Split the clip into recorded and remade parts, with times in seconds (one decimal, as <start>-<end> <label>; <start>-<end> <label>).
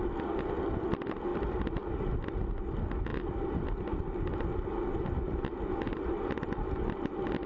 0.0-7.5 recorded